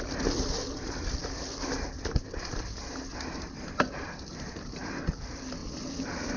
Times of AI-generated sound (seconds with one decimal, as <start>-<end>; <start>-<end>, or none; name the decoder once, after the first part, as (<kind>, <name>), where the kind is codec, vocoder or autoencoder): none